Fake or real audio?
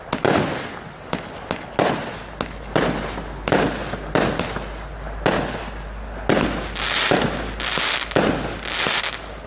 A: real